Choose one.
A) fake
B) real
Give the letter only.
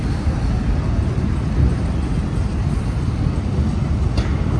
B